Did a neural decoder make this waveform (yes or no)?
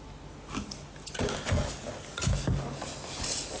no